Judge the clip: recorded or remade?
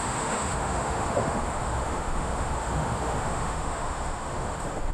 remade